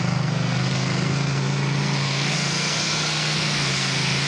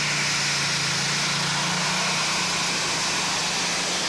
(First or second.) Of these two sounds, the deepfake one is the first